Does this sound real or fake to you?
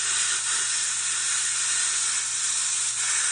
real